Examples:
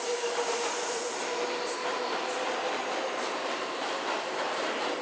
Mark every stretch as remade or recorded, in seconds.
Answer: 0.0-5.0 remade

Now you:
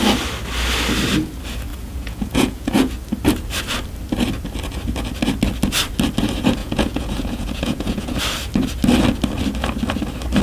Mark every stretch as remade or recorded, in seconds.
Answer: 0.0-1.7 recorded; 1.7-2.9 remade; 2.9-6.6 recorded; 6.6-8.2 remade; 8.2-10.4 recorded

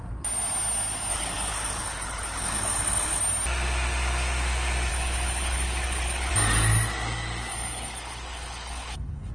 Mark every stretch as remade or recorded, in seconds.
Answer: 0.0-1.1 recorded; 1.1-3.2 remade; 3.2-4.9 recorded; 4.9-6.3 remade; 6.3-7.5 recorded; 7.5-9.3 remade